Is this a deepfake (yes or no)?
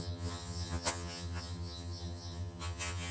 yes